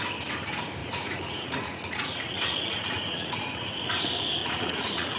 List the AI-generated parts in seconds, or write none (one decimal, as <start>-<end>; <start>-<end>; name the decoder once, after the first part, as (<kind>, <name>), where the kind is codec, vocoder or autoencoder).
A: 0.8-3.9 (vocoder, Vocos); 4.4-5.2